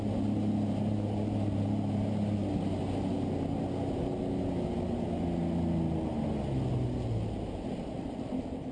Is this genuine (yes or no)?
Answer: yes